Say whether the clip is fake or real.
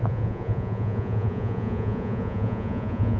fake